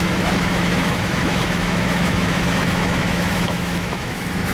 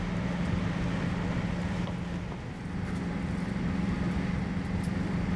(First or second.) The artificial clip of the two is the first